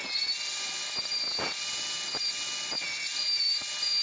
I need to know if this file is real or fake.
real